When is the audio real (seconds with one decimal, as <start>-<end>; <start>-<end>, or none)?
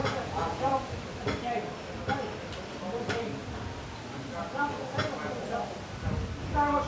0.8-6.9